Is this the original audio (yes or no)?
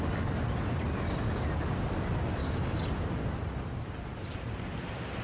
yes